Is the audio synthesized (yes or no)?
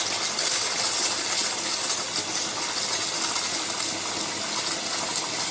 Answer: no